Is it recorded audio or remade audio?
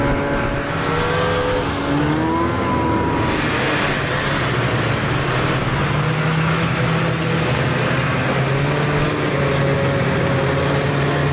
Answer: recorded